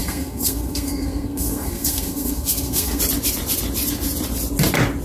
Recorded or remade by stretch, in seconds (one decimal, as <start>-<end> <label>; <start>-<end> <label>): 0.0-3.0 remade; 3.0-5.0 recorded